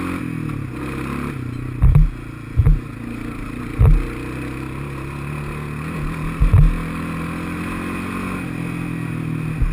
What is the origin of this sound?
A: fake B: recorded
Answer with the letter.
B